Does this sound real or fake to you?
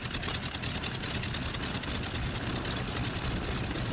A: real